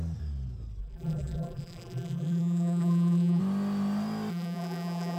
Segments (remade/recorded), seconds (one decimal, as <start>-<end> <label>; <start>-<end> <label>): 0.0-0.8 recorded; 0.8-3.4 remade; 3.4-4.3 recorded; 4.3-5.2 remade